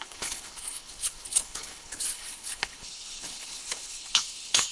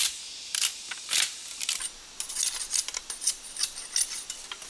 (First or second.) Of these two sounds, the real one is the second